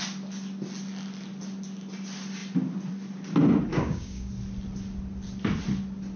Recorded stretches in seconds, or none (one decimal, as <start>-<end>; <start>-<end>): 0.0-3.7; 4.3-6.2